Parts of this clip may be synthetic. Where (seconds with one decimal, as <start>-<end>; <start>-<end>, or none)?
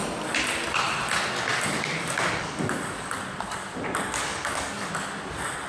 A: 1.5-3.2; 4.3-4.9